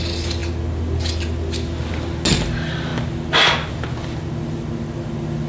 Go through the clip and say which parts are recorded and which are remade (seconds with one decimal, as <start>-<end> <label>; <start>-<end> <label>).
0.0-5.5 recorded